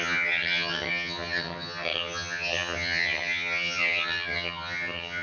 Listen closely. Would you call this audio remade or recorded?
remade